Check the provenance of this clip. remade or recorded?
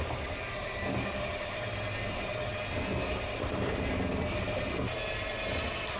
recorded